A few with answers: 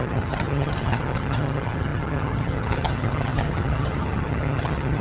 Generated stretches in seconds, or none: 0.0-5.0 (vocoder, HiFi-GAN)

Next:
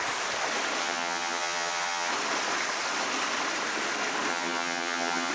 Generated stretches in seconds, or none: 0.8-2.1 (vocoder, HiFi-GAN); 4.3-5.3

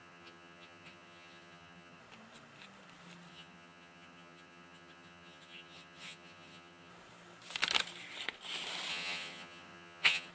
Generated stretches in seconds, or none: 0.0-2.0 (vocoder, HiFi-GAN); 3.3-6.9; 8.9-10.3

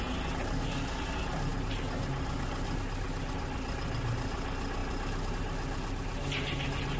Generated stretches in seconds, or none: none

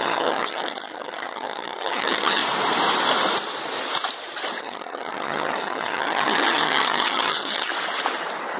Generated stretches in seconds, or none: 0.0-2.4 (vocoder, HiFi-GAN); 4.6-7.7

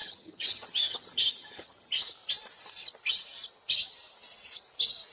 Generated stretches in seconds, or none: 0.0-2.0 (vocoder, HiFi-GAN)

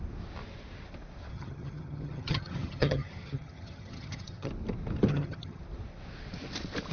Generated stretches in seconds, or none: 1.3-4.5 (vocoder, HiFi-GAN); 5.1-5.6